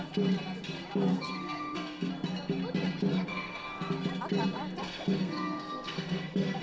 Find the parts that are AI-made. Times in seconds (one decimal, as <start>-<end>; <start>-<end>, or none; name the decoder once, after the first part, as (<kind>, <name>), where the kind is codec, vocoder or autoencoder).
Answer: 1.1-2.1 (codec, SNAC); 3.1-3.8; 4.8-6.6